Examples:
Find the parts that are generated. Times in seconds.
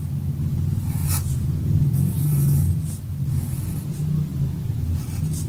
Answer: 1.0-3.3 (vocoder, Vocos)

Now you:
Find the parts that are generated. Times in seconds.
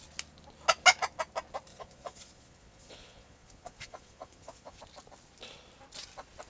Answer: 1.7-4.8 (vocoder, Vocos)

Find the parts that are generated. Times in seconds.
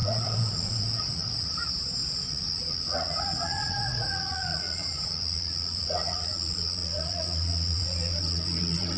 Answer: 0.0-9.0 (vocoder, Vocos)